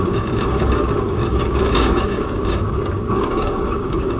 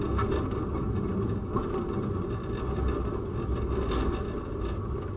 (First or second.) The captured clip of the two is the second